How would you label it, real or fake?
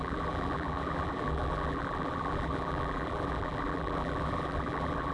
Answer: fake